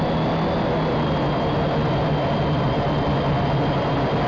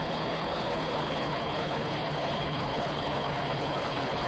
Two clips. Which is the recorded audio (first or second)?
first